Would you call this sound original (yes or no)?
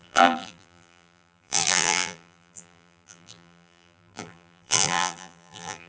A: no